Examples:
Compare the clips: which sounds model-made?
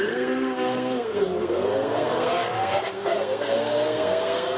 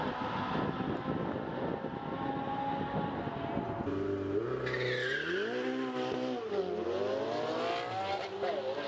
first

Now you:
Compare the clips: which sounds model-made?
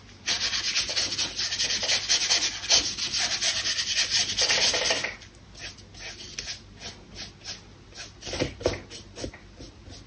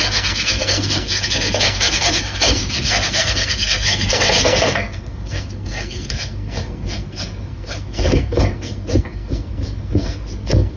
second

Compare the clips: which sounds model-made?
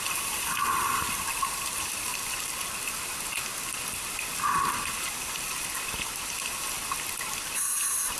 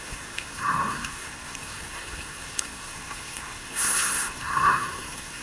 second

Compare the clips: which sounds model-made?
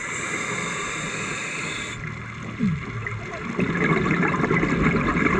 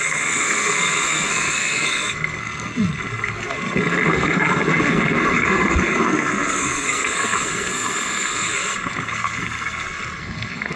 second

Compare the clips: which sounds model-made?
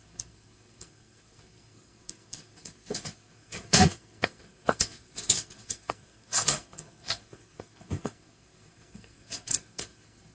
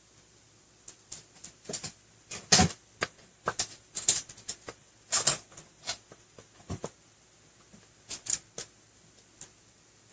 first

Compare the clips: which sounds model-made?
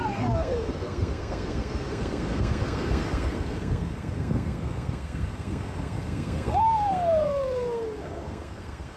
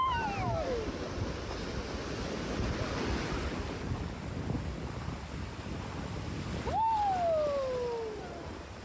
first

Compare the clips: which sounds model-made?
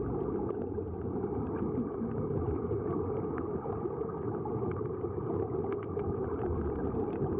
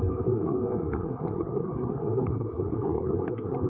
second